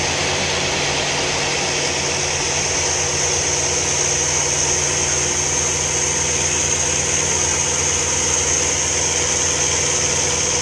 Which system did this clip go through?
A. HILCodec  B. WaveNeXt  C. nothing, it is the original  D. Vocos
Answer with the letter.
C